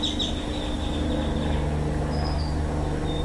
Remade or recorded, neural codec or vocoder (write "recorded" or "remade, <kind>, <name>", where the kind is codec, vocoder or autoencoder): recorded